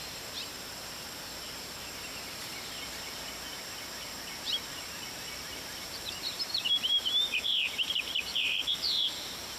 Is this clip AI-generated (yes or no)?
yes